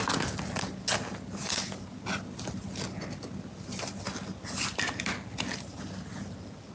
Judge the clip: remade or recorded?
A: recorded